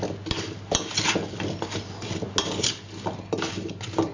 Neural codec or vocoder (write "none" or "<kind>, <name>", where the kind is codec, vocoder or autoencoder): none